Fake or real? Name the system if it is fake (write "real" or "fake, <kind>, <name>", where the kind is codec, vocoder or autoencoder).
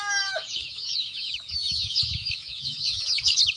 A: fake, autoencoder, DAC-VAE